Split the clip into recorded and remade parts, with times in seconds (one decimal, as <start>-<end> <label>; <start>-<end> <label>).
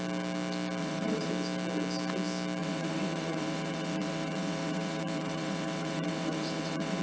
0.0-0.8 recorded; 0.8-1.3 remade; 1.3-2.6 recorded; 2.6-7.0 remade